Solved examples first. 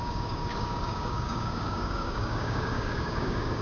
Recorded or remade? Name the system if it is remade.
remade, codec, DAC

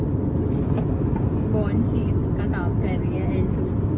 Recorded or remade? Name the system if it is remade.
recorded